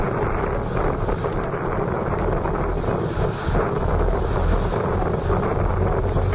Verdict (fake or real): real